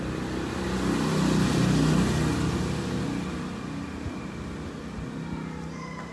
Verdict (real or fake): real